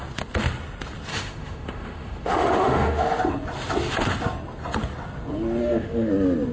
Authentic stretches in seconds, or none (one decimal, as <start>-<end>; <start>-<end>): 0.0-1.1; 3.2-5.6; 6.1-6.5